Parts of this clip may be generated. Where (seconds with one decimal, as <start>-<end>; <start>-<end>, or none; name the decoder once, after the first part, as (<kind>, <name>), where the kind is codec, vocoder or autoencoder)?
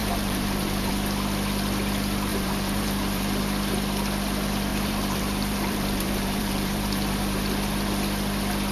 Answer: 0.0-0.9 (vocoder, BigVGAN v2); 2.3-3.4; 4.7-7.4